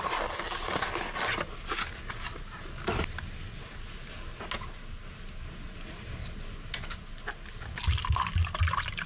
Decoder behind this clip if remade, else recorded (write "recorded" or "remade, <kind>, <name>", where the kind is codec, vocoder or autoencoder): recorded